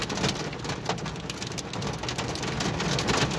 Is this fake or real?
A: real